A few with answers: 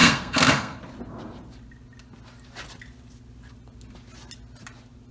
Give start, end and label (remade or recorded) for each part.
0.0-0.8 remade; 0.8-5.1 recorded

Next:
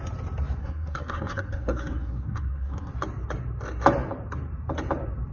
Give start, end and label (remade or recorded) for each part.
0.0-0.6 recorded; 0.6-2.9 remade; 2.9-5.3 recorded

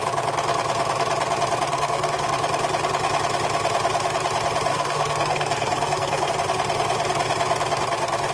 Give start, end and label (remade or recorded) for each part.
0.0-1.7 recorded; 1.7-2.3 remade; 2.3-4.7 recorded; 4.7-6.3 remade; 6.3-8.3 recorded